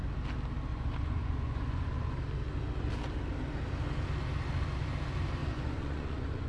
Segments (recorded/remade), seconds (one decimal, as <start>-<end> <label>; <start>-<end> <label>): 0.0-0.7 recorded; 0.7-2.2 remade; 2.2-5.4 recorded; 5.4-6.5 remade